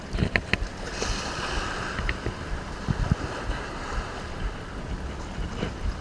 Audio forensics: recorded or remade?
recorded